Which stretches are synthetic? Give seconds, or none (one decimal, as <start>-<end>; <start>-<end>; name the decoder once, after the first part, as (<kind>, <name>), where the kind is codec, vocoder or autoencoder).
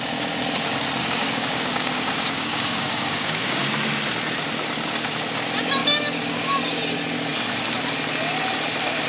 1.0-3.6 (codec, DAC); 5.8-6.8